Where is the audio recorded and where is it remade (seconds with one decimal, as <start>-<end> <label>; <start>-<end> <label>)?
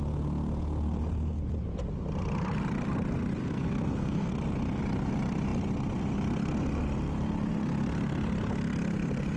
0.0-3.4 recorded; 3.4-4.3 remade; 4.3-9.4 recorded